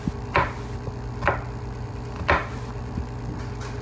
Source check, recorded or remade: recorded